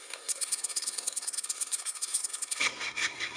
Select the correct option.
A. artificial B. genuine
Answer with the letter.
A